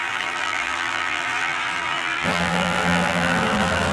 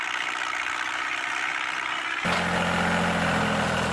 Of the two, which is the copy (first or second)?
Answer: first